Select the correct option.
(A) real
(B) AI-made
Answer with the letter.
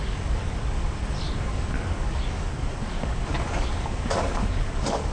B